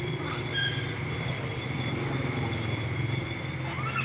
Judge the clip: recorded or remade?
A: recorded